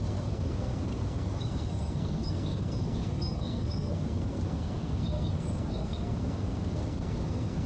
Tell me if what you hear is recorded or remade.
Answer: remade